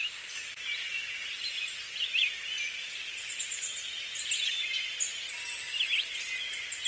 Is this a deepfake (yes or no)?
no